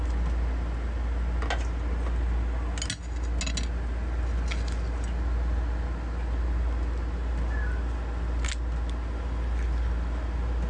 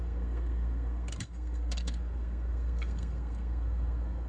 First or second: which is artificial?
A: second